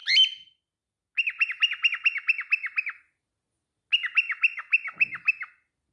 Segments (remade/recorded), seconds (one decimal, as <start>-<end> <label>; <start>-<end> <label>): 0.0-5.9 recorded